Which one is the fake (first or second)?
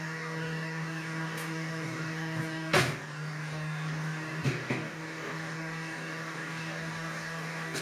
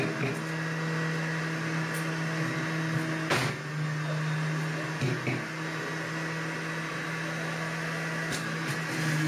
first